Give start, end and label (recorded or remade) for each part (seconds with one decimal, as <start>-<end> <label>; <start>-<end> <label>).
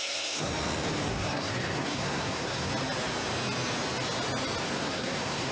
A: 0.0-0.5 remade; 0.5-1.1 recorded; 1.1-2.7 remade; 2.7-4.7 recorded; 4.7-5.5 remade